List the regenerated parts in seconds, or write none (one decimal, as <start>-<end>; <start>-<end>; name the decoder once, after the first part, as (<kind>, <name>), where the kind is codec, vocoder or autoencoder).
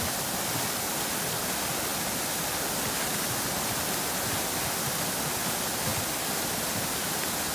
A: none